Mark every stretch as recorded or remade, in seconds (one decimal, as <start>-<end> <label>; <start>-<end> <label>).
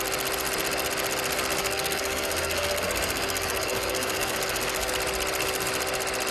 0.0-1.6 recorded; 1.6-4.9 remade; 4.9-6.3 recorded